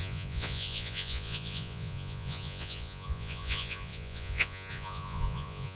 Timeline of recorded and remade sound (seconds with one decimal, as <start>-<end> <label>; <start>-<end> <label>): 0.0-5.8 remade